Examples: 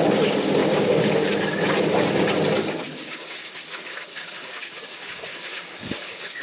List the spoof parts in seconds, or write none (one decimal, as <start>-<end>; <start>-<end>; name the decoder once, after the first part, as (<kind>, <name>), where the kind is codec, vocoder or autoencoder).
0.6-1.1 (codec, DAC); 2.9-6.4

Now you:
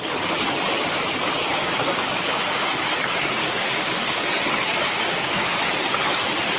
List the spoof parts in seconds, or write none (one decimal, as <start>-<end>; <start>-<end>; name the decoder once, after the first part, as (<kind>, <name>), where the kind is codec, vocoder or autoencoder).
1.4-2.7 (codec, DAC); 3.4-4.2; 4.7-5.5

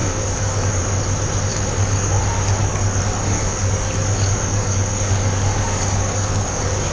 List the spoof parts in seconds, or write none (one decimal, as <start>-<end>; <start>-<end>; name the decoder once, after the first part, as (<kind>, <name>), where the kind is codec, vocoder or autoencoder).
0.0-0.8 (codec, DAC); 1.5-2.2; 2.6-6.9

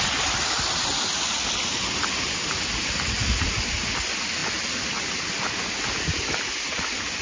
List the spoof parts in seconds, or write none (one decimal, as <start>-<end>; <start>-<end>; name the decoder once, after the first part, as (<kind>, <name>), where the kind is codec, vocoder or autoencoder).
none

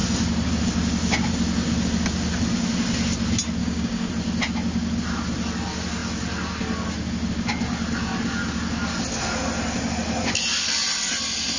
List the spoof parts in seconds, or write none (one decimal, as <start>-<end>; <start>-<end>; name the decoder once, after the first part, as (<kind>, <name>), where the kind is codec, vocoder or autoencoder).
3.6-4.1 (codec, DAC)

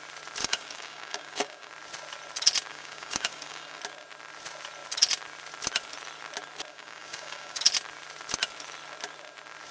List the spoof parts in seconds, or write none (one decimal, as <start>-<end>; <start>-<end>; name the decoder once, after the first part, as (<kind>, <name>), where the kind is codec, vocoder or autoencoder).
0.4-1.7 (codec, DAC); 2.7-3.8; 6.7-7.6